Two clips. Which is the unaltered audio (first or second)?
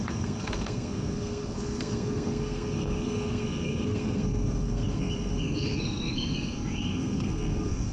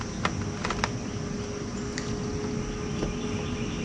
second